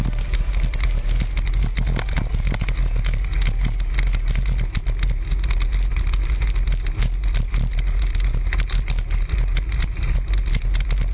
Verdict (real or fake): real